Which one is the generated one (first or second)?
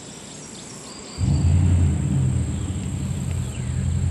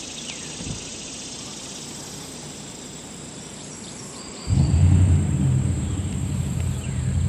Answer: second